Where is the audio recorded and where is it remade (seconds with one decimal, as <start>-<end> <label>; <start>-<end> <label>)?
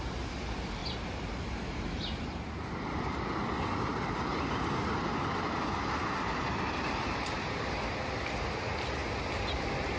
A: 0.0-10.0 recorded